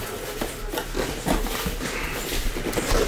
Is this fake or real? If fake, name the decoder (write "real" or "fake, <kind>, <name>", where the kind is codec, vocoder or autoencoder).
real